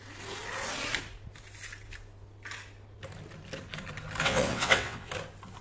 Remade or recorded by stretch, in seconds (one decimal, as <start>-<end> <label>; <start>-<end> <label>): 0.0-4.2 recorded; 4.2-5.1 remade; 5.1-5.6 recorded